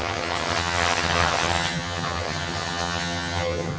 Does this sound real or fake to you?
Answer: fake